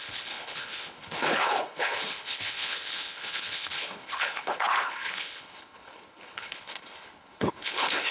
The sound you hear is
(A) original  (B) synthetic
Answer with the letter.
B